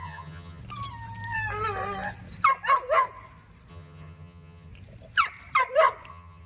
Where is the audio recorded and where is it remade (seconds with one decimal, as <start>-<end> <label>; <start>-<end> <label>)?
0.0-0.6 remade; 0.6-3.7 recorded; 3.7-4.7 remade; 4.7-6.1 recorded; 6.1-6.5 remade